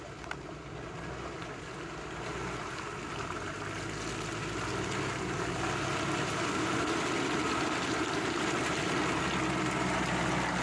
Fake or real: real